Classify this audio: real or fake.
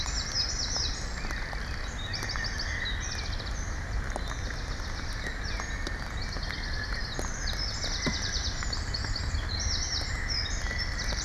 real